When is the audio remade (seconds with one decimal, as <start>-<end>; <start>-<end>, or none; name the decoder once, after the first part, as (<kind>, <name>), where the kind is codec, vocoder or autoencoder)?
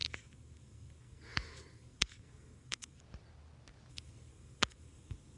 0.0-3.0 (codec, SNAC); 3.9-5.4